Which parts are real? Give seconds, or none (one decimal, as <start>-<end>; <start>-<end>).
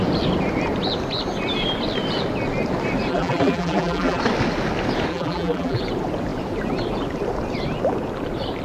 0.0-3.1; 4.2-5.1; 5.8-8.6